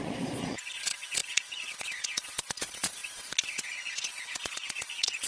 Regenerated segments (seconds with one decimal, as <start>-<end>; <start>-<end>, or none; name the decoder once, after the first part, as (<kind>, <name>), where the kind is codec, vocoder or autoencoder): 0.0-5.3 (vocoder, Vocos)